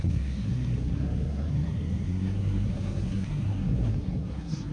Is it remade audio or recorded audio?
remade